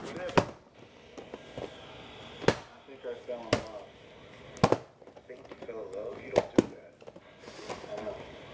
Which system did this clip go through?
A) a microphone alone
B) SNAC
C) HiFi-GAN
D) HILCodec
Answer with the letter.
A